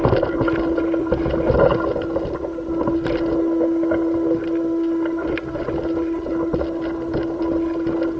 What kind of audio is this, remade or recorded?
recorded